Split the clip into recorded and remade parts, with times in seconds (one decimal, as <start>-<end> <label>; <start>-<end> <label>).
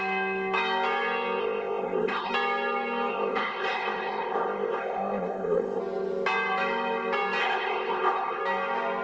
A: 0.0-1.4 recorded; 1.4-2.3 remade; 2.3-3.1 recorded; 3.1-5.8 remade; 5.8-7.4 recorded; 7.4-8.4 remade; 8.4-9.0 recorded